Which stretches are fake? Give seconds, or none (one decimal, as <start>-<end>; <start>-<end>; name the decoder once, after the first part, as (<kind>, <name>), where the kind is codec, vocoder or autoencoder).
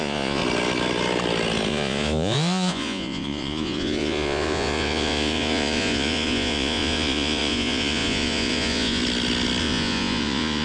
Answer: 0.0-0.4 (vocoder, Vocos); 1.7-9.0; 9.6-10.6